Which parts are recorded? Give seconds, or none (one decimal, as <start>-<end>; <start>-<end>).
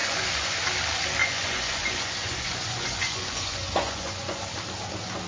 0.6-1.2; 4.4-5.3